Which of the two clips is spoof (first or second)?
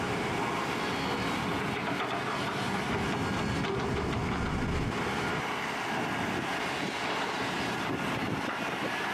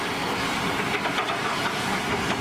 second